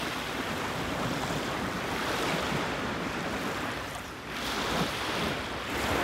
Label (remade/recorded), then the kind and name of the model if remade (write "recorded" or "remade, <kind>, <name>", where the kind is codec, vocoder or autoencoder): recorded